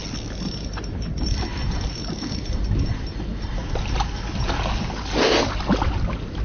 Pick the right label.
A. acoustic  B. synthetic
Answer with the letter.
A